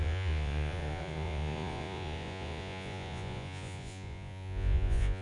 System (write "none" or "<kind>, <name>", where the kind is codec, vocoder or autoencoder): vocoder, Vocos